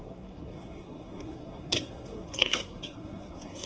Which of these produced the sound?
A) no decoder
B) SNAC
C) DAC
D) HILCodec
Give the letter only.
B